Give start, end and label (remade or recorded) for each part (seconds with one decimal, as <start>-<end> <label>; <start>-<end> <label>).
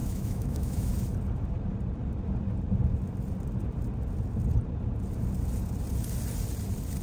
0.0-0.9 remade; 0.9-7.0 recorded